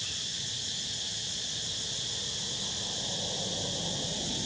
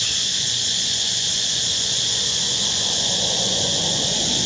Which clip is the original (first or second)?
first